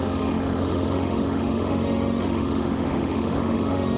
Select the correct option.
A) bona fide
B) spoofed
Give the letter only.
B